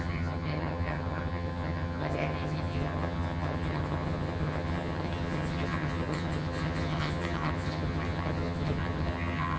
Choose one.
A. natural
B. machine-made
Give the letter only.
B